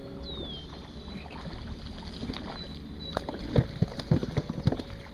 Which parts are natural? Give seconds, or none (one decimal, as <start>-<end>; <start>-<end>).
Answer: 0.0-5.1